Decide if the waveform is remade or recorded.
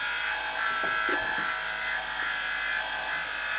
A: recorded